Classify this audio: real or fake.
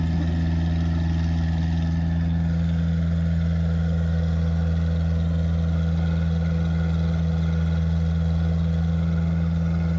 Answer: real